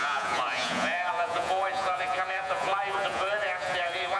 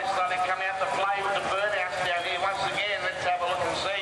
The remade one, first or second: first